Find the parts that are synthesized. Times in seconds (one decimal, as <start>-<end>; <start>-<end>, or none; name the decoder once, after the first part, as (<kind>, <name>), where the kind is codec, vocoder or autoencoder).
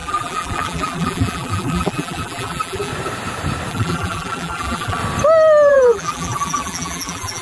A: 0.0-2.9 (vocoder, BigVGAN v2); 3.7-5.0; 5.7-7.4